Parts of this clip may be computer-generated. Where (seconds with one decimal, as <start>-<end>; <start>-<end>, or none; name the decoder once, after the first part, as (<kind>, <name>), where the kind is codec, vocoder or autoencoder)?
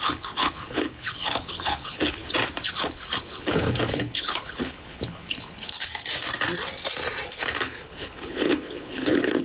0.0-2.2 (codec, HILCodec); 2.8-5.9; 7.3-9.4